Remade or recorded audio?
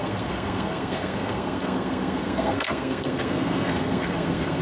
remade